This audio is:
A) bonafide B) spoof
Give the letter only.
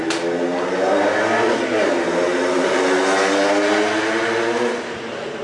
A